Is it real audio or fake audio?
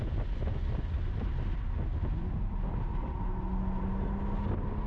real